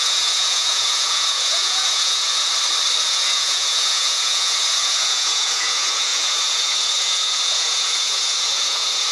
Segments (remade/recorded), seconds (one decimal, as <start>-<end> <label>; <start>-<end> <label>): 0.0-2.5 remade; 2.5-3.0 recorded; 3.0-9.1 remade